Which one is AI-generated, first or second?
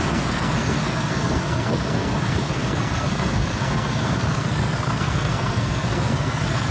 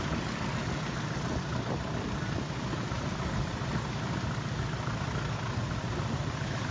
first